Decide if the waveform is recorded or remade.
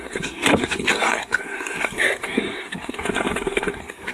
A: remade